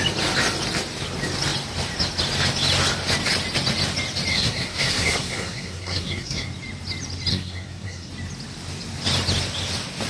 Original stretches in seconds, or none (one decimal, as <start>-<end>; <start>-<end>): 0.0-4.3; 6.5-7.3; 8.1-10.1